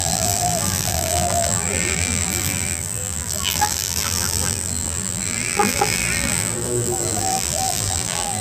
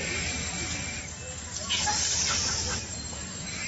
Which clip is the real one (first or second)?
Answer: second